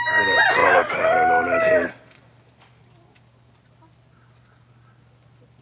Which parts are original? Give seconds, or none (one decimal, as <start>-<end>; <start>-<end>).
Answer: 0.0-0.6; 1.9-5.6